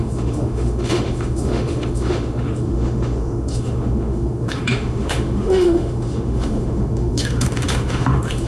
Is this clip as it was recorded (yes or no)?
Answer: no